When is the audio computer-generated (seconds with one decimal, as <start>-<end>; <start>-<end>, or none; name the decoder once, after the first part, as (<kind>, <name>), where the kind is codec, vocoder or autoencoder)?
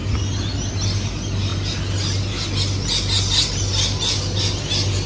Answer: none